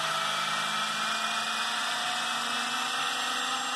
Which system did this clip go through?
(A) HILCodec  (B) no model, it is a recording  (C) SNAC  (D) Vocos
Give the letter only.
B